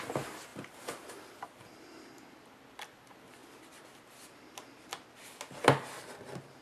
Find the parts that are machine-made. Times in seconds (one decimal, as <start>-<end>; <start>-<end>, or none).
none